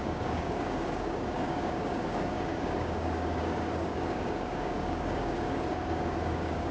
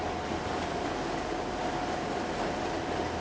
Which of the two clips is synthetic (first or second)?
first